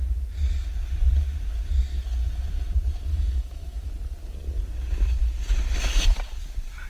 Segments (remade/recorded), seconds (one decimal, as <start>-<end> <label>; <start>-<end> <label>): 0.0-3.1 recorded; 3.1-3.9 remade; 3.9-6.9 recorded